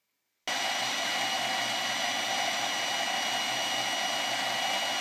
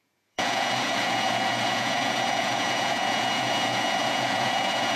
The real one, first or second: first